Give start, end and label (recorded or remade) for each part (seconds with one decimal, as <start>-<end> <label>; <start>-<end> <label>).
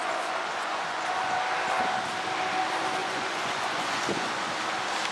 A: 0.0-1.4 remade; 1.4-3.0 recorded; 3.0-4.5 remade; 4.5-5.1 recorded